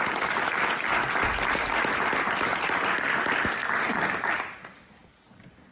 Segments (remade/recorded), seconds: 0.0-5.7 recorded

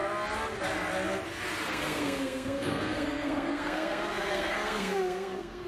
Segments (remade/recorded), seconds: 0.0-1.7 recorded; 1.7-5.7 remade

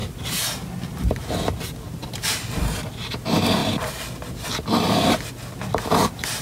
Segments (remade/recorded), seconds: 0.0-1.6 remade; 1.6-2.0 recorded; 2.0-2.9 remade; 2.9-3.6 recorded; 3.6-4.5 remade; 4.5-6.4 recorded

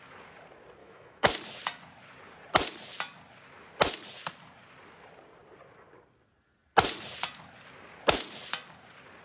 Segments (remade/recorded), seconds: 0.0-0.8 recorded; 0.8-1.3 remade; 1.3-9.2 recorded

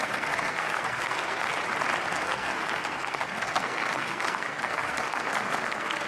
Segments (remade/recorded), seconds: 0.0-1.5 remade; 1.5-2.1 recorded; 2.1-6.1 remade

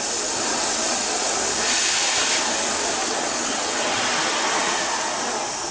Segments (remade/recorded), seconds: 0.0-0.5 recorded; 0.5-1.3 remade; 1.3-3.0 recorded; 3.0-4.0 remade; 4.0-5.7 recorded

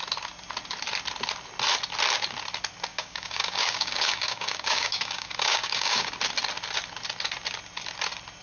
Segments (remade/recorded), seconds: 0.0-2.9 recorded; 2.9-6.1 remade; 6.1-8.4 recorded

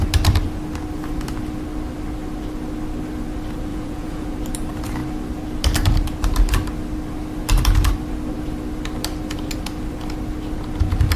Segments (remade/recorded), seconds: 0.0-3.7 recorded; 3.7-4.3 remade; 4.3-11.2 recorded